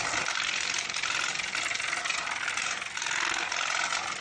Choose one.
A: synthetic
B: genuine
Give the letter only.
B